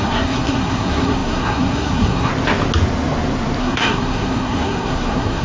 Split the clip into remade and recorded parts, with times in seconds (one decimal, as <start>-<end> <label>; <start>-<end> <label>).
0.0-2.3 remade; 2.3-3.6 recorded; 3.6-5.4 remade